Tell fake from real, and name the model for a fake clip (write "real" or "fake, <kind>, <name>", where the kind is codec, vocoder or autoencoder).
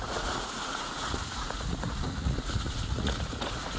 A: fake, vocoder, Vocos